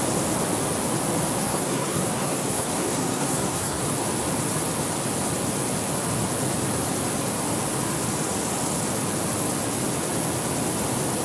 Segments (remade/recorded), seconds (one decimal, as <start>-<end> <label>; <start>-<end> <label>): 0.0-1.4 recorded; 1.4-3.8 remade; 3.8-11.2 recorded